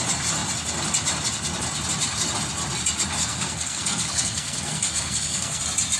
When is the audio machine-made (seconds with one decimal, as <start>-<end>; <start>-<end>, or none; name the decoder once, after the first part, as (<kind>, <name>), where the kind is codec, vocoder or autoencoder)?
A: 3.2-5.6 (codec, SNAC)